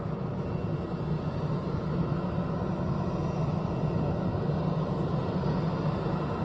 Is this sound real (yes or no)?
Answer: yes